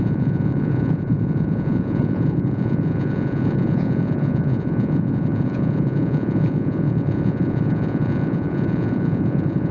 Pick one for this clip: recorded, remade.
remade